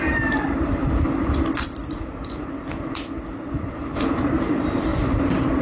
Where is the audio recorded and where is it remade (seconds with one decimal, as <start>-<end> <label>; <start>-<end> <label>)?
0.0-0.8 remade; 0.8-4.2 recorded; 4.2-4.9 remade; 4.9-5.6 recorded